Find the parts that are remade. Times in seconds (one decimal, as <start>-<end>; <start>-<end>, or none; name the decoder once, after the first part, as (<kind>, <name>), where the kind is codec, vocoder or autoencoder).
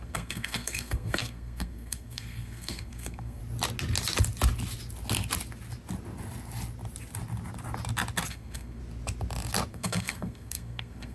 0.0-3.4 (codec, SNAC); 8.3-8.8; 9.7-11.1